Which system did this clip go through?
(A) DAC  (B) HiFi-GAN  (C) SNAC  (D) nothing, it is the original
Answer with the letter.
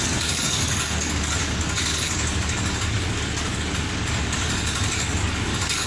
A